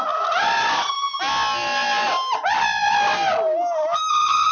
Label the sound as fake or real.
real